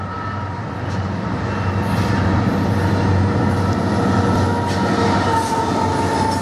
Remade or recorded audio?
recorded